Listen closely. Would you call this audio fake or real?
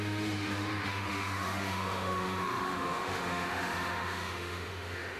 fake